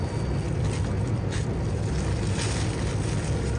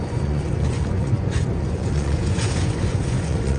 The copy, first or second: second